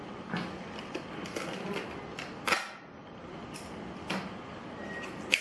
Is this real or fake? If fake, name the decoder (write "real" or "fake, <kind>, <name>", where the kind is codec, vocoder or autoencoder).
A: real